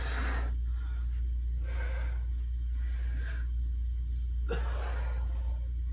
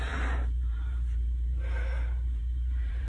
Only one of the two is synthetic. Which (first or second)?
second